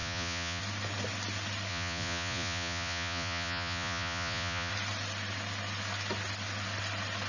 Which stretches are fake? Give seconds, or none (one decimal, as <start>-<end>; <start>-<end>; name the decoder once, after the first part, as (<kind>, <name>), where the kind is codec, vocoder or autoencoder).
0.0-0.6 (vocoder, Vocos); 1.7-4.7